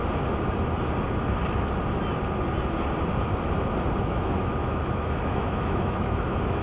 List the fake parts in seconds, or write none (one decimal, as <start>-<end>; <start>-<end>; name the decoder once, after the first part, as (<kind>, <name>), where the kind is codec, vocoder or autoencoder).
4.0-6.6 (autoencoder, DAC-VAE)